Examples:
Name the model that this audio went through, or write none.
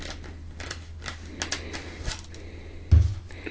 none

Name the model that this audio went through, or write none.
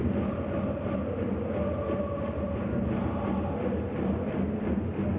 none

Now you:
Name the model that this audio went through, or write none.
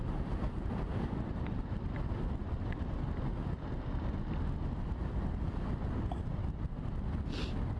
none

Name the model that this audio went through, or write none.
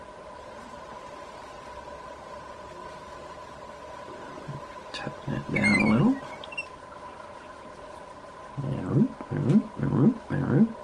none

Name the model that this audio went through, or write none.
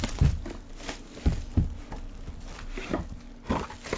none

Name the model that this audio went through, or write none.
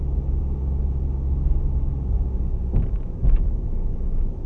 none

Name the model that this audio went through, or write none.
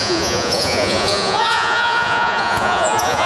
vocoder, Vocos